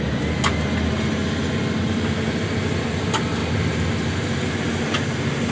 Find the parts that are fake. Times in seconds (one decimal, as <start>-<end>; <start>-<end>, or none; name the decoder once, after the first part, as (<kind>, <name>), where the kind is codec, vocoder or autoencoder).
none